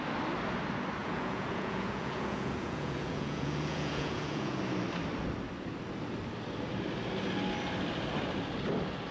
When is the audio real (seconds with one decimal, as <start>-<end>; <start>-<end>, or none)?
0.0-1.0; 4.6-9.1